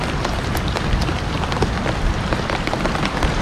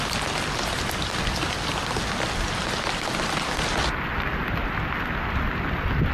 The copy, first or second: first